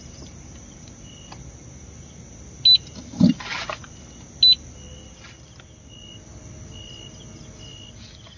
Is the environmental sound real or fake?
real